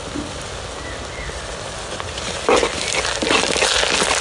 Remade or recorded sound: recorded